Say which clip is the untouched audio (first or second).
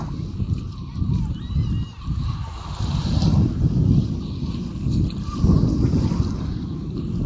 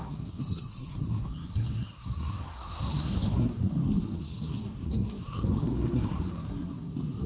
first